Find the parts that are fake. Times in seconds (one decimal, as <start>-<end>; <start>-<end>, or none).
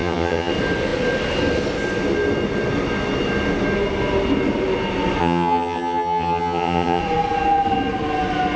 0.0-0.5; 5.2-7.0